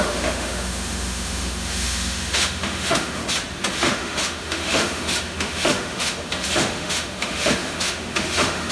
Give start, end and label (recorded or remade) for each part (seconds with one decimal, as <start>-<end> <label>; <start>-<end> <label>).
0.0-3.2 remade; 3.2-3.7 recorded; 3.7-8.7 remade